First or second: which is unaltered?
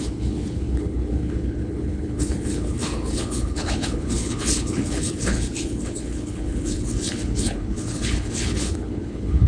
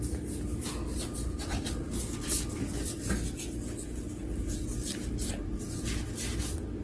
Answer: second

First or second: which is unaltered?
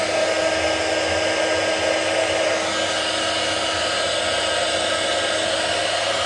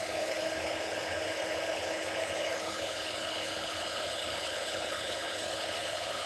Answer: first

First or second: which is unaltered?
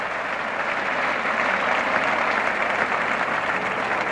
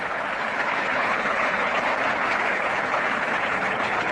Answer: first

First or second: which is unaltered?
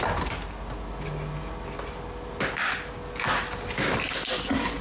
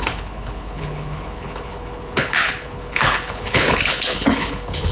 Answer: first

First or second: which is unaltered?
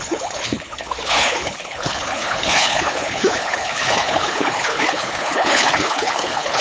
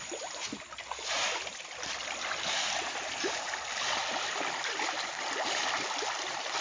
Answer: second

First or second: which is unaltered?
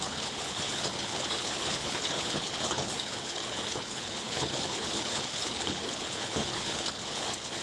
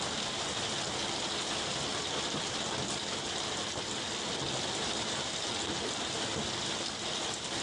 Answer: second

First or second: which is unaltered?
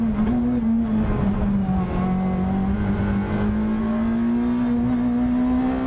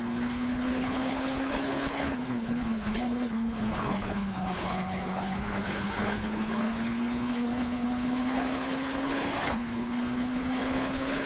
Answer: first